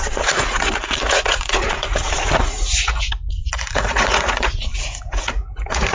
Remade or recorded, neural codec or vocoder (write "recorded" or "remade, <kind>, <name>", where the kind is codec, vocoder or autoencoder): remade, vocoder, Vocos